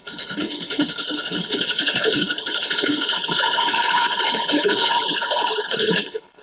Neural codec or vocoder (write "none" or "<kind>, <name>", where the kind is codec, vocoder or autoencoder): codec, HILCodec